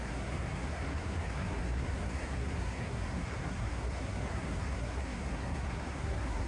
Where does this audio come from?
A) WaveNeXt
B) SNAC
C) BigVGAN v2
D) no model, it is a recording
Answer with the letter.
B